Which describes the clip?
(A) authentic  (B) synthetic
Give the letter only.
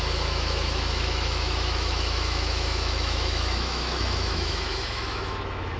B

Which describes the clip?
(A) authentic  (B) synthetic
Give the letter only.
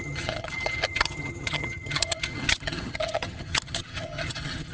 B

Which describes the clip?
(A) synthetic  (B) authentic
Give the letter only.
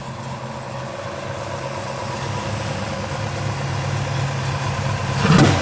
B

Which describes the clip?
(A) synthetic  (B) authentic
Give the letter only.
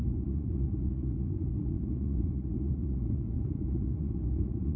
A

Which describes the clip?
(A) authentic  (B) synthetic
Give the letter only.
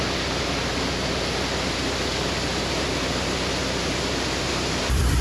A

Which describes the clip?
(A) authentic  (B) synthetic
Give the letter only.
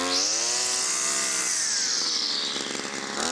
A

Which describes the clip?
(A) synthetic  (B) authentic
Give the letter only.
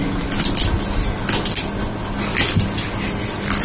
B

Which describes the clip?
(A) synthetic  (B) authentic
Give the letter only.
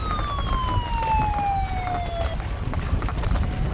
B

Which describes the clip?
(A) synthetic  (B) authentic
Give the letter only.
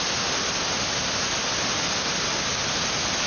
B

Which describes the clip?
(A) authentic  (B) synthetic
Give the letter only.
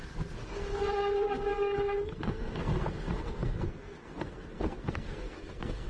B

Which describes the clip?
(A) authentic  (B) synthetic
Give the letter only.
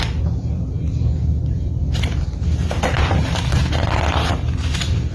B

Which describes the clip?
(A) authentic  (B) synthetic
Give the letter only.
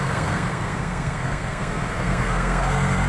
B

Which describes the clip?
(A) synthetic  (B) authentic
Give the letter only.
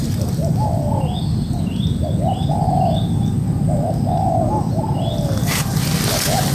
B